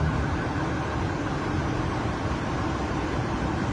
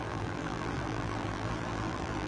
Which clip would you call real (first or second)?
first